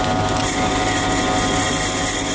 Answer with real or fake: real